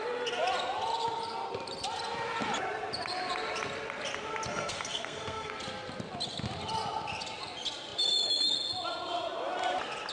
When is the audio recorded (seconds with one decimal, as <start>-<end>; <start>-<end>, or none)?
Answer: 0.0-4.5; 5.5-10.1